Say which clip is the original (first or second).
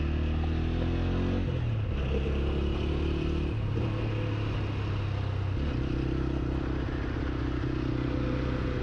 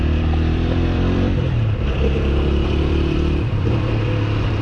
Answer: first